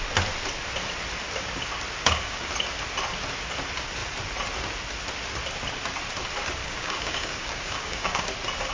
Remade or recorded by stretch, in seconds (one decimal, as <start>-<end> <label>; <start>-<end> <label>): 0.0-2.0 recorded; 2.0-2.5 remade; 2.5-6.6 recorded; 6.6-8.2 remade; 8.2-8.7 recorded